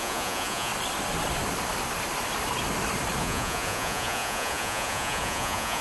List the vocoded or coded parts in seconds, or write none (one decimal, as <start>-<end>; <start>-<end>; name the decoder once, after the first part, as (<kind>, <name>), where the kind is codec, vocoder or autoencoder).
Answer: 0.0-0.7 (vocoder, Vocos); 3.2-5.8